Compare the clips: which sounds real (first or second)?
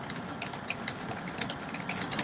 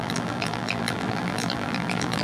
first